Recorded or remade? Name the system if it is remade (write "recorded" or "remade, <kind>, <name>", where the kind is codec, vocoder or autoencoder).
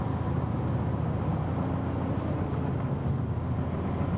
recorded